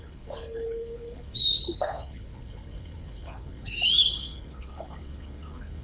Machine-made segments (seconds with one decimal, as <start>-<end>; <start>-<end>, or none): 0.0-5.8